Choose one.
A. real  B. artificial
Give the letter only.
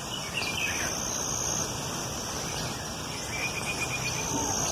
A